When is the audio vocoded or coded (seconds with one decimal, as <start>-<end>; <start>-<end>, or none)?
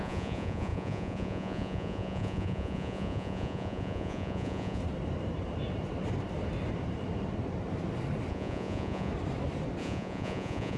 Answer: 0.0-4.8; 8.3-9.1; 9.8-10.8